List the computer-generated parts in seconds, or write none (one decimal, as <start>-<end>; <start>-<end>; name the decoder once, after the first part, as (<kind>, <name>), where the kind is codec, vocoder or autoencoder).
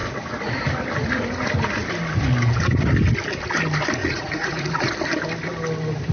4.0-4.9 (vocoder, Vocos)